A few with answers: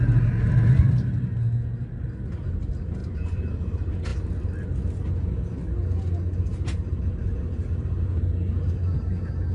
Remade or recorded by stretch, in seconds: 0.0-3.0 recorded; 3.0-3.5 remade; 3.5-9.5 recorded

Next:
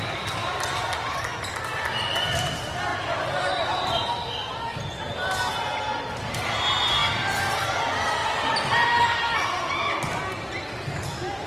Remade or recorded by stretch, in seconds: 0.0-8.2 recorded; 8.2-9.3 remade; 9.3-11.5 recorded

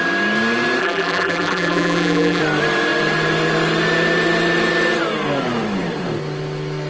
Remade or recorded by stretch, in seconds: 0.0-0.8 recorded; 0.8-2.4 remade; 2.4-6.9 recorded

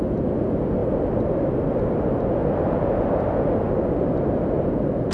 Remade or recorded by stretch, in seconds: 0.0-5.1 recorded

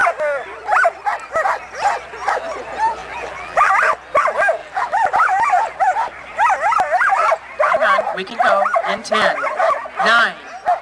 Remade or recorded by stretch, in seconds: 0.0-3.0 recorded; 3.0-3.7 remade; 3.7-4.6 recorded; 4.6-5.8 remade; 5.8-10.8 recorded

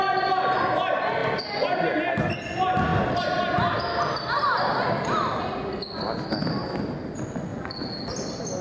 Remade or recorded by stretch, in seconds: 0.0-7.5 recorded; 7.5-8.1 remade; 8.1-8.6 recorded

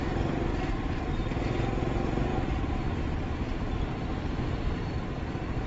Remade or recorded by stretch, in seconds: 0.0-0.5 remade; 0.5-1.8 recorded; 1.8-2.3 remade; 2.3-5.2 recorded; 5.2-5.7 remade